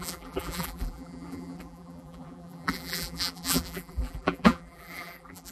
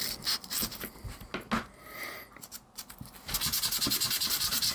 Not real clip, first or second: first